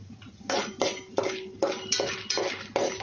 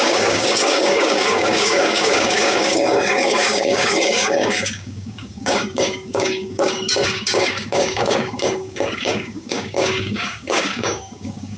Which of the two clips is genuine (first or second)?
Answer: first